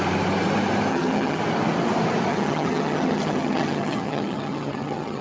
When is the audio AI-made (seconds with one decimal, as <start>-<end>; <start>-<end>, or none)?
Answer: 0.9-1.4; 2.3-5.2